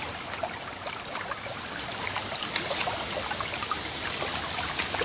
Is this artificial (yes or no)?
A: no